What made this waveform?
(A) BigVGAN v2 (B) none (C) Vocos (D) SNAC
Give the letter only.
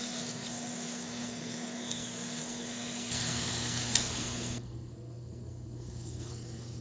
D